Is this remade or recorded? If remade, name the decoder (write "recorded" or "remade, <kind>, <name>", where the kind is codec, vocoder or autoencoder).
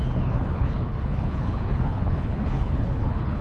remade, codec, HILCodec